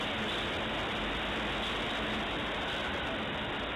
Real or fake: real